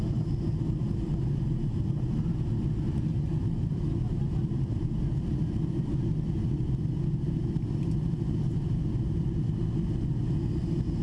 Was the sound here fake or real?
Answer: real